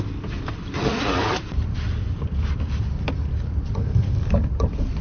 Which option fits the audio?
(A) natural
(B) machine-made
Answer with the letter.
B